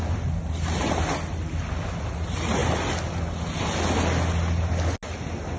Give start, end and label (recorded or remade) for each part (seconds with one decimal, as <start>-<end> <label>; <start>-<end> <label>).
0.0-5.6 recorded